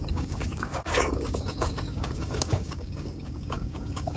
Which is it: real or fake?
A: fake